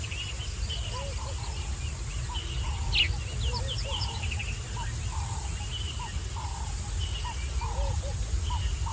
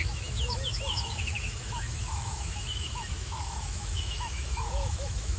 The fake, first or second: second